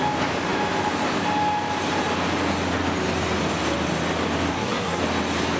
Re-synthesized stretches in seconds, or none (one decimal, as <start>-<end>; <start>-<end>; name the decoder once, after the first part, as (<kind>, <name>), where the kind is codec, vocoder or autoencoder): 4.5-5.0 (codec, SNAC)